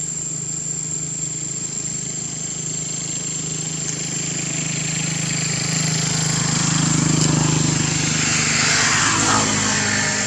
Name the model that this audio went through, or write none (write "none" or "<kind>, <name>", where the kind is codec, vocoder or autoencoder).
none